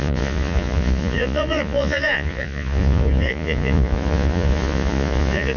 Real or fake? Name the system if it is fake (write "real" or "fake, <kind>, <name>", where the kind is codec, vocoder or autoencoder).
fake, vocoder, Vocos